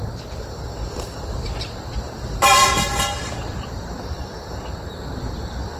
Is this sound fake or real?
fake